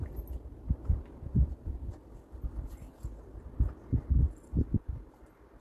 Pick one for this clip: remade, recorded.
recorded